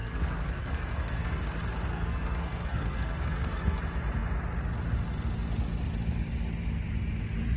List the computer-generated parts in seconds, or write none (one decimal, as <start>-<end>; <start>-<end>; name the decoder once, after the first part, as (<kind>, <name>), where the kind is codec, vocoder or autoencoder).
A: 0.0-1.4 (codec, SNAC); 1.9-3.8